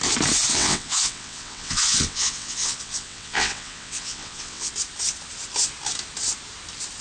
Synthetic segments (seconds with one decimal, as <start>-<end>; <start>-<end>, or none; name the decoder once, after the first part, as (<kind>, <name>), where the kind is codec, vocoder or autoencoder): 0.5-4.7 (vocoder, WaveNeXt)